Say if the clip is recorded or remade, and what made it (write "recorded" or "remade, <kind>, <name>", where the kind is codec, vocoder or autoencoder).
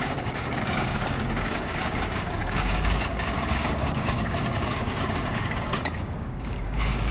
remade, codec, DAC